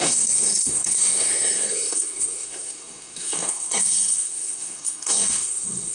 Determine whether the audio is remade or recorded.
remade